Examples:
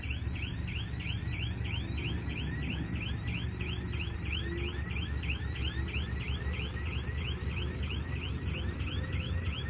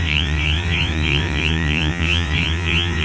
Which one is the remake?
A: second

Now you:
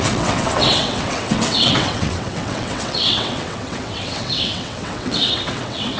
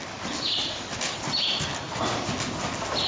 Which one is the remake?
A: first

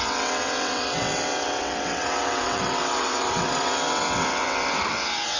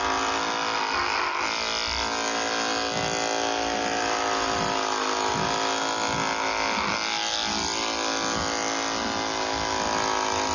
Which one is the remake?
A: first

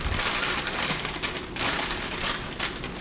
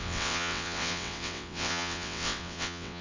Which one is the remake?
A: second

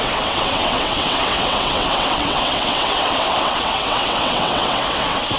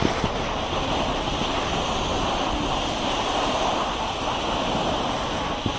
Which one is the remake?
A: first